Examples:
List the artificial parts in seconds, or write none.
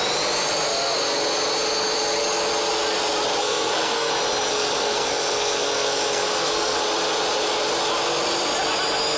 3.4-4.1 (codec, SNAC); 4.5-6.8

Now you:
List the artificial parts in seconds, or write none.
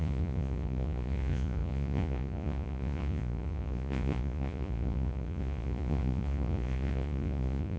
0.0-7.8 (vocoder, Vocos)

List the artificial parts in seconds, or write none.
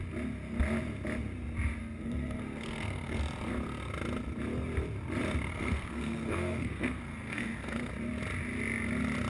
1.8-3.2 (codec, SNAC); 5.5-7.9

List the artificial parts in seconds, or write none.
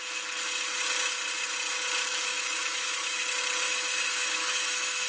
2.1-3.4 (autoencoder, DAC-VAE); 4.1-5.1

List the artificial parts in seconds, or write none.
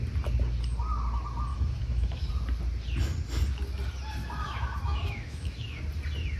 1.5-2.3 (autoencoder, DAC-VAE); 4.2-5.8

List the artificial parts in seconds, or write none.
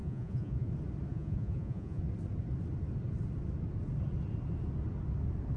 0.0-0.7 (vocoder, Vocos); 1.1-2.0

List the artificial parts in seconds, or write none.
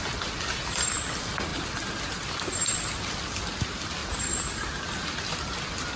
1.5-3.0 (vocoder, BigVGAN v2)